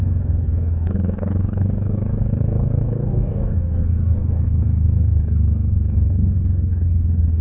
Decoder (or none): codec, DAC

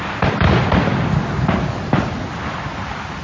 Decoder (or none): none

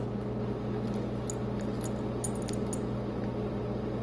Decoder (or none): none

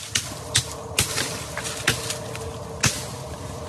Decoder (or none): none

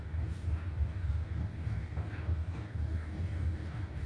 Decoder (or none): codec, DAC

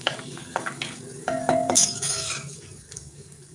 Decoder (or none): codec, DAC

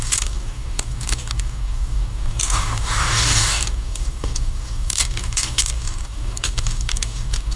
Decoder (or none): codec, DAC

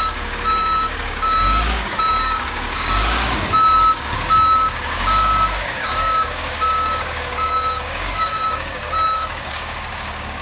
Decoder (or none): codec, DAC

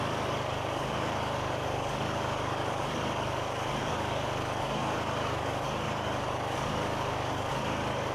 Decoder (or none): codec, DAC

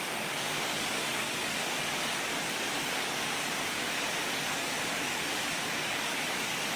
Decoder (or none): codec, DAC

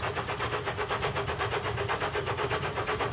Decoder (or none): none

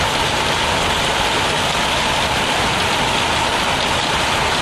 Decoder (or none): none